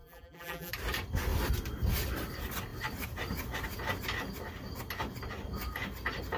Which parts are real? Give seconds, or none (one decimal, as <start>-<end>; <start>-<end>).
0.7-6.4